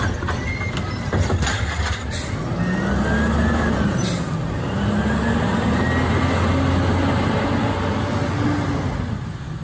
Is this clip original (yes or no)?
yes